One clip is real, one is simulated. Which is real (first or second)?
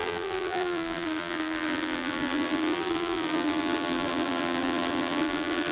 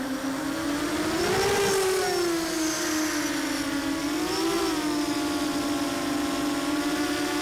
second